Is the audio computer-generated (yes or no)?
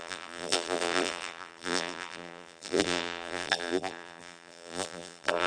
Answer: yes